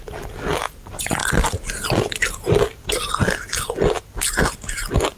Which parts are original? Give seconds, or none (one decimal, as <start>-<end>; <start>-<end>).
0.0-5.2